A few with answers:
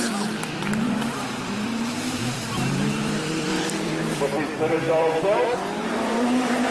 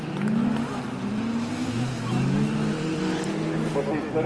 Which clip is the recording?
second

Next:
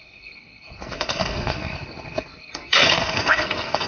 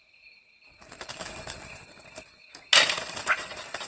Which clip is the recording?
second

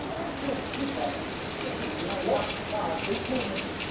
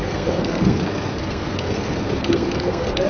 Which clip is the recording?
first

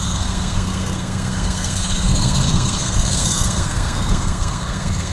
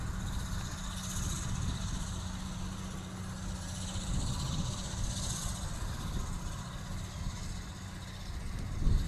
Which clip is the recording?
second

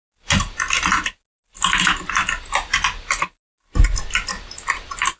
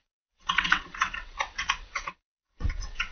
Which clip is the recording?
first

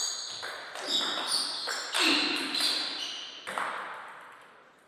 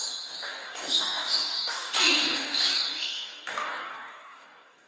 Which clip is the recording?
first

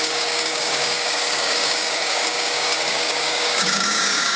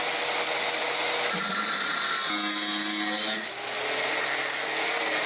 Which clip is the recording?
second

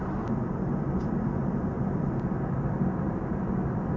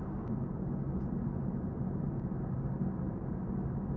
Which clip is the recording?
second